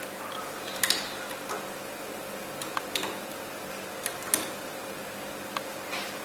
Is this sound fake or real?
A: real